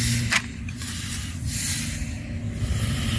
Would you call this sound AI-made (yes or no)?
no